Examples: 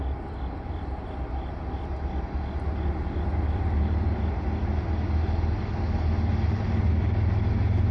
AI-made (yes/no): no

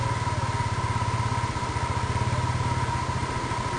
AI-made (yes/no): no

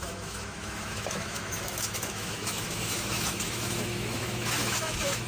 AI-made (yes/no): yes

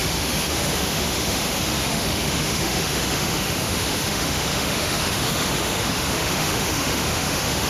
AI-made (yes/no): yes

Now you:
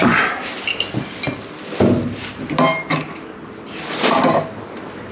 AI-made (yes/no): no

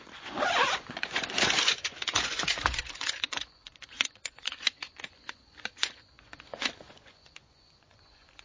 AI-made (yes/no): yes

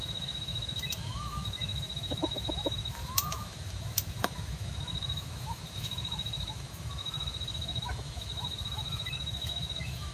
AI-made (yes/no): yes